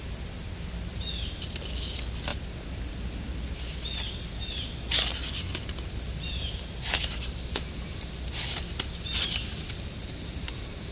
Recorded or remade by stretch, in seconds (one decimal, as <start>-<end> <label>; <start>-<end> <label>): 0.0-10.9 recorded